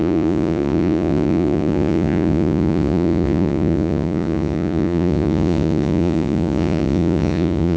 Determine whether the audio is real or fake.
fake